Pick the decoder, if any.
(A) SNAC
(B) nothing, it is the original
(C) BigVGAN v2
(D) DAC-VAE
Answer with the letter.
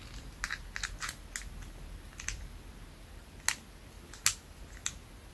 B